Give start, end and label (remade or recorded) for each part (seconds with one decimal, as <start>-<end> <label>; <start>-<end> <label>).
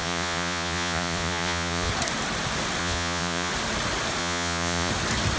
0.0-1.9 remade; 1.9-2.8 recorded; 2.8-3.5 remade; 3.5-4.2 recorded; 4.2-4.9 remade; 4.9-5.4 recorded